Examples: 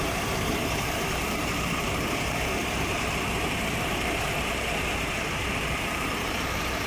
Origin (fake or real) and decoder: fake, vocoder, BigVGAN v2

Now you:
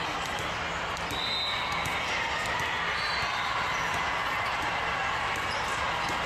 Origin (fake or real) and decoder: real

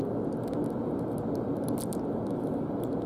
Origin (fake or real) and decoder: real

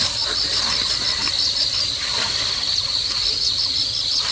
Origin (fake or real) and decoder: real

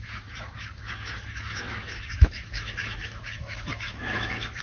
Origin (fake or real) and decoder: fake, autoencoder, DAC-VAE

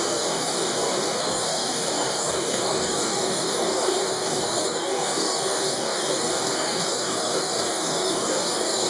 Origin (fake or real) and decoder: fake, codec, DAC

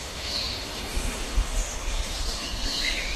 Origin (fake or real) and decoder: fake, autoencoder, DAC-VAE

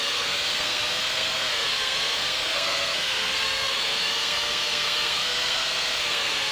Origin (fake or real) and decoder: fake, codec, SNAC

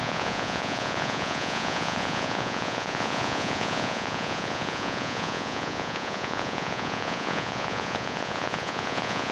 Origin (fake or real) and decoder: fake, vocoder, Vocos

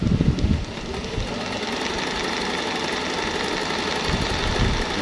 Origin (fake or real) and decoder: real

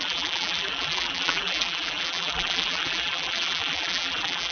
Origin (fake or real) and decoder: fake, vocoder, BigVGAN v2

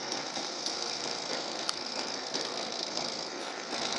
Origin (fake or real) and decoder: fake, codec, SNAC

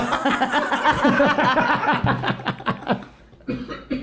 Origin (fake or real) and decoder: real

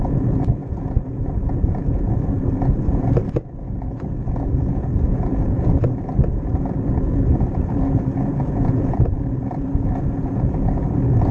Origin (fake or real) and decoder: fake, vocoder, Vocos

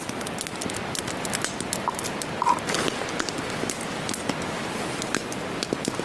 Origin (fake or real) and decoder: real